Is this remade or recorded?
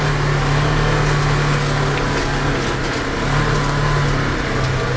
recorded